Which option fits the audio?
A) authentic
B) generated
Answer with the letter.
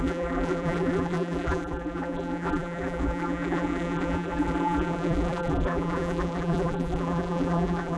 B